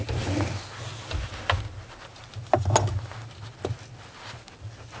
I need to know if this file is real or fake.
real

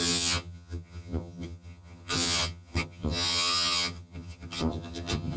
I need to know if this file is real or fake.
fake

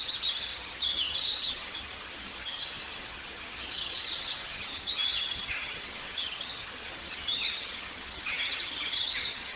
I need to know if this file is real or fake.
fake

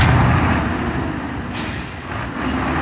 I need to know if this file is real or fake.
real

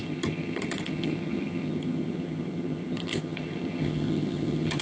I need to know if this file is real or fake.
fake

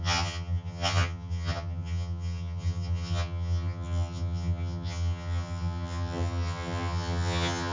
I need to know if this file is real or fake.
fake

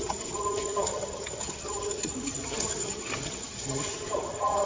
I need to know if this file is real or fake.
fake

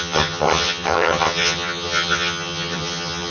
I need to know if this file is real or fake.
fake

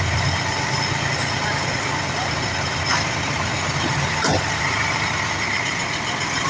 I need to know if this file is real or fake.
real